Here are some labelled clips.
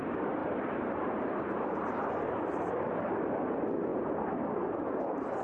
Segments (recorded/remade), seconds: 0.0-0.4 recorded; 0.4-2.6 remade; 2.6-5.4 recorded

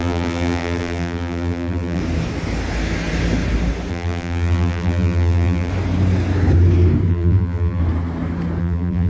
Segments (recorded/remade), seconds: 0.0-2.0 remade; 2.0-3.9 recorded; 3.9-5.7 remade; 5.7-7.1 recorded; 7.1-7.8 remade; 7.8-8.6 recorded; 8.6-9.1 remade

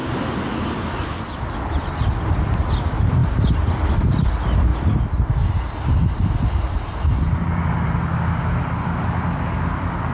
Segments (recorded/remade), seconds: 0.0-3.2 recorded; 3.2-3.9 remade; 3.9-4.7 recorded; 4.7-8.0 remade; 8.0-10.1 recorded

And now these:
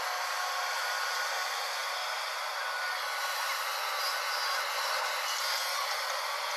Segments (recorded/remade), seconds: 0.0-6.6 recorded

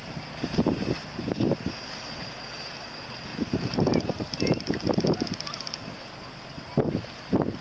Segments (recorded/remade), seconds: 0.0-1.4 remade; 1.4-3.3 recorded; 3.3-6.1 remade; 6.1-7.6 recorded